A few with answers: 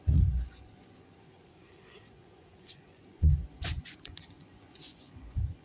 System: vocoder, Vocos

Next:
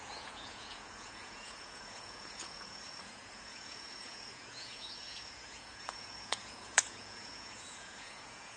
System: vocoder, Vocos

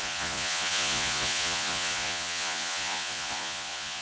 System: vocoder, Vocos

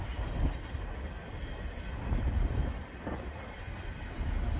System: none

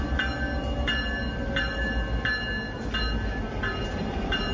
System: none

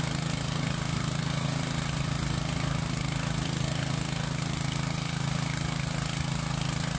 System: none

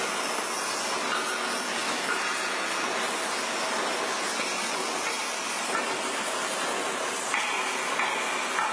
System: none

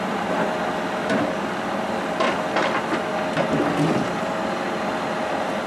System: none